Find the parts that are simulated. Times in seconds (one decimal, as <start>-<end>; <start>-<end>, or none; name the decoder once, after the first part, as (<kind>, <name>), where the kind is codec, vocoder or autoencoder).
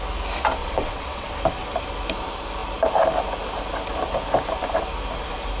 0.6-1.4 (vocoder, WaveNeXt)